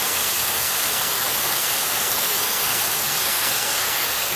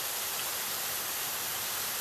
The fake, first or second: first